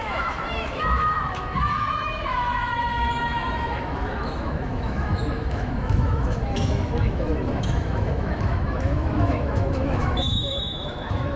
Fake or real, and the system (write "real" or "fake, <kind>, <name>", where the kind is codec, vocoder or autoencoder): fake, autoencoder, DAC-VAE